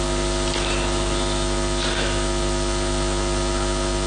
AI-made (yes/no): no